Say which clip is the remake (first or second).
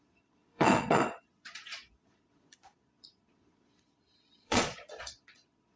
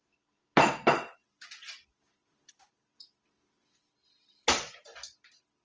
first